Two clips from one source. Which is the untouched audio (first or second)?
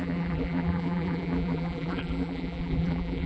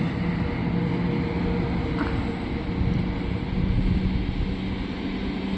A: second